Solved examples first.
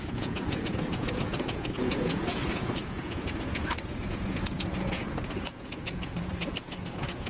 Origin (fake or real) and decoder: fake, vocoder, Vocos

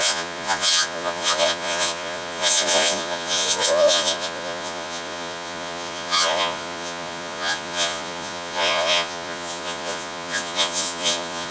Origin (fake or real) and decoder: fake, vocoder, Vocos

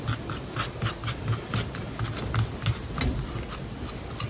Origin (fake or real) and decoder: real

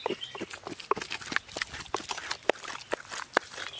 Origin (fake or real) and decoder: real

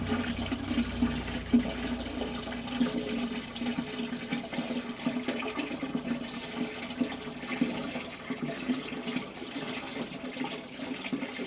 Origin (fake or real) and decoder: real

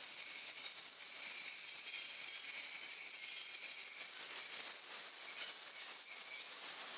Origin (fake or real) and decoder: real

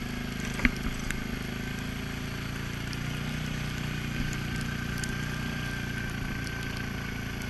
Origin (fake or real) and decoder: real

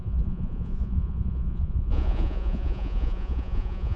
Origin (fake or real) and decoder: fake, vocoder, Vocos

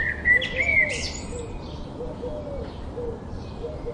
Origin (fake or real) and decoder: real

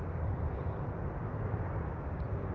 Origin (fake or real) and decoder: real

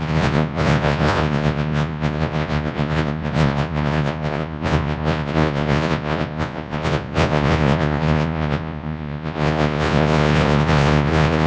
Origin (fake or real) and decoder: fake, vocoder, Vocos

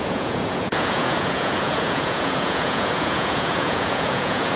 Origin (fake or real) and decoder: fake, vocoder, Vocos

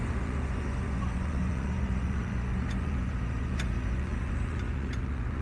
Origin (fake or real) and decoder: fake, vocoder, Vocos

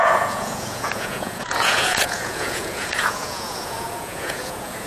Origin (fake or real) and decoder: fake, vocoder, Vocos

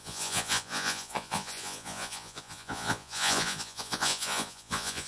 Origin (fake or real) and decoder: fake, vocoder, Vocos